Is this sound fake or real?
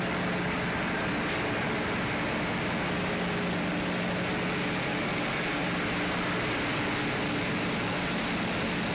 real